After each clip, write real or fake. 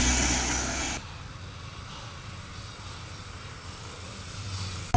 real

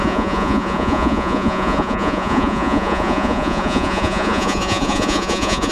fake